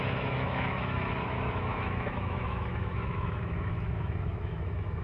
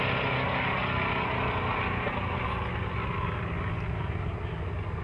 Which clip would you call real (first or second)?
second